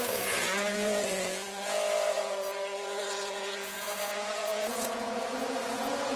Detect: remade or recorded remade